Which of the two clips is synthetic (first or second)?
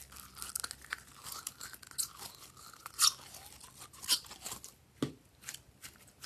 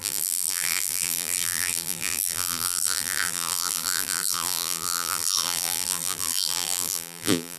second